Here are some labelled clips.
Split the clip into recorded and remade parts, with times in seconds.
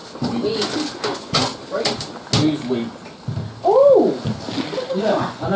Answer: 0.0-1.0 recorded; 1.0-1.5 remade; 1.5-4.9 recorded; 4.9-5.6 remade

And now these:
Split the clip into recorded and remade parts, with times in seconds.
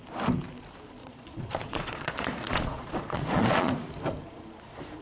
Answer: 0.0-1.0 recorded; 1.0-3.7 remade; 3.7-5.0 recorded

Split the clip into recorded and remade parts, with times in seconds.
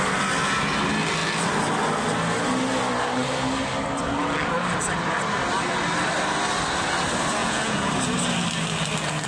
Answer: 0.0-7.4 recorded; 7.4-7.9 remade; 7.9-9.3 recorded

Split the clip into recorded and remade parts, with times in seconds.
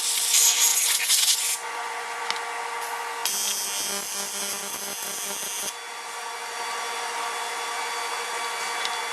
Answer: 0.0-0.7 recorded; 0.7-2.2 remade; 2.2-9.1 recorded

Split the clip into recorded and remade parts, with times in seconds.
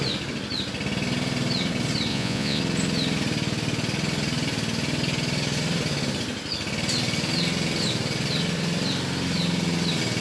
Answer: 0.0-2.1 recorded; 2.1-2.6 remade; 2.6-10.2 recorded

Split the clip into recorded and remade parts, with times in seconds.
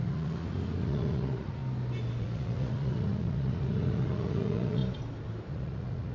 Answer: 0.0-1.6 remade; 1.6-2.2 recorded; 2.2-4.8 remade; 4.8-5.5 recorded; 5.5-6.1 remade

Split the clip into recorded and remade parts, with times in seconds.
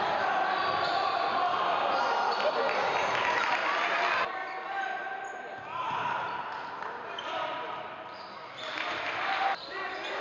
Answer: 0.0-10.2 recorded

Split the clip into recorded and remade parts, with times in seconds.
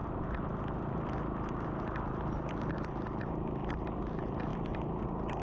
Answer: 0.0-5.4 recorded